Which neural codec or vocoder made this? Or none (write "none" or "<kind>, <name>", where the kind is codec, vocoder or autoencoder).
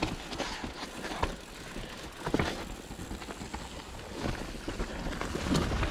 none